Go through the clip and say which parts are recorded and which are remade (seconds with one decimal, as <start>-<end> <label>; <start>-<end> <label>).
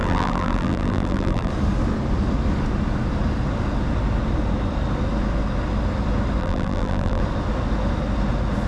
0.0-1.5 remade; 1.5-6.4 recorded; 6.4-7.2 remade; 7.2-8.7 recorded